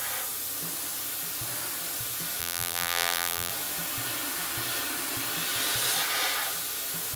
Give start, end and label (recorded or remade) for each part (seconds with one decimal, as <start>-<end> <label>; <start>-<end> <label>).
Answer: 0.0-2.4 recorded; 2.4-3.5 remade; 3.5-7.2 recorded